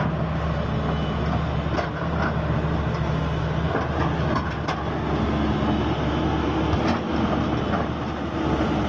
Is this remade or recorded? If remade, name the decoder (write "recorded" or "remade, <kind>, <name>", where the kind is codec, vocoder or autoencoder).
recorded